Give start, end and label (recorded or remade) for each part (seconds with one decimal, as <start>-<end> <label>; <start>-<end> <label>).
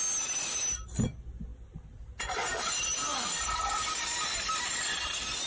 0.0-5.5 recorded